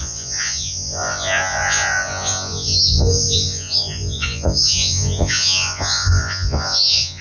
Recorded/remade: remade